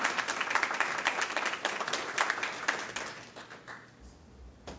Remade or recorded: recorded